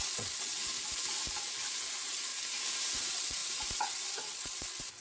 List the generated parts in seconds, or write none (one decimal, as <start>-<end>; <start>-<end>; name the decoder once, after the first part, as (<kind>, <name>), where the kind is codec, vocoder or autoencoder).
0.0-0.6 (vocoder, WaveNeXt); 1.9-2.3; 2.9-5.0